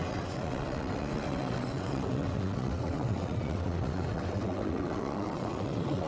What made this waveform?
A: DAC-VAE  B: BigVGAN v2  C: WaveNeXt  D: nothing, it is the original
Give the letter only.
C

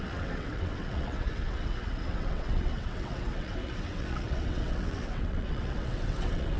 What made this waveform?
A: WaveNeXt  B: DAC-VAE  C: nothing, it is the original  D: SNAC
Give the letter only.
A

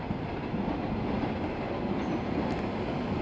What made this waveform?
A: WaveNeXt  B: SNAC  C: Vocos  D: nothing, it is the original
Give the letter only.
D